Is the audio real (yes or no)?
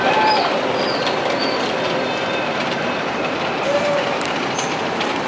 no